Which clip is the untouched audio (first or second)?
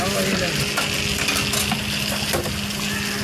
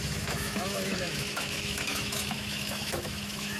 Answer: first